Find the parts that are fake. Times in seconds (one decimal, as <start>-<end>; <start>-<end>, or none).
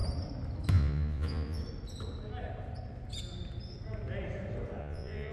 0.7-1.6; 4.8-5.3